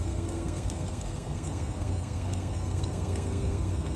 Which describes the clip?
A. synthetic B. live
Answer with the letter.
A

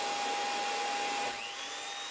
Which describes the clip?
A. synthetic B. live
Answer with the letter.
B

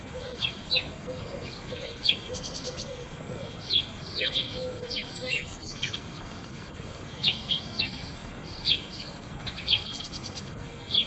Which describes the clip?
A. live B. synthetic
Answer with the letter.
B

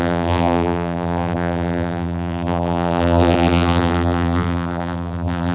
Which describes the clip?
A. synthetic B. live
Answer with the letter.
A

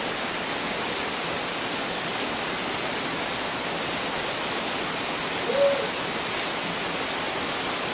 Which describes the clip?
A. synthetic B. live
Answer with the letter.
B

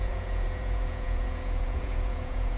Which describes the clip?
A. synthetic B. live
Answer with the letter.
A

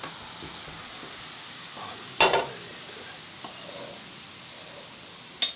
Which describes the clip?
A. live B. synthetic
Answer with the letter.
A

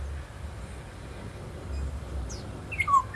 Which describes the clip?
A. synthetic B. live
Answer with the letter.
B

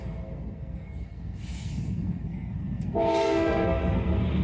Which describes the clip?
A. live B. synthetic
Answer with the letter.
B